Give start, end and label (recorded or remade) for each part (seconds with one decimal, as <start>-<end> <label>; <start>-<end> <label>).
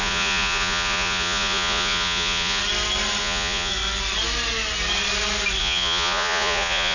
0.0-2.6 remade; 2.6-3.2 recorded; 3.2-3.7 remade; 3.7-5.6 recorded; 5.6-6.9 remade